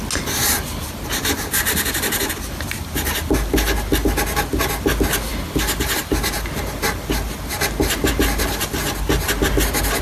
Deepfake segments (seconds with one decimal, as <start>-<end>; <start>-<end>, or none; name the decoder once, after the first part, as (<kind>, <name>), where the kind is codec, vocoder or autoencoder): none